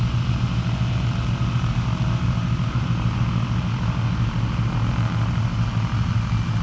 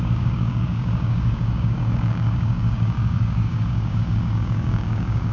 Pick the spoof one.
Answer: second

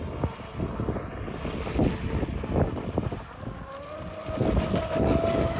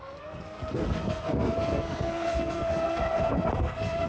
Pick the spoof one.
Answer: second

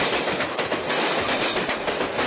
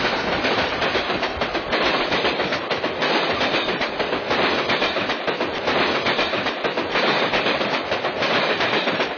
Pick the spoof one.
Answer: second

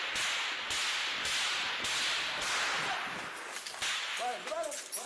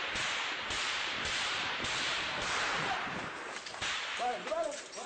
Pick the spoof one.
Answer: second